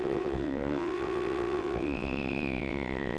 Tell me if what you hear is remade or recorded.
remade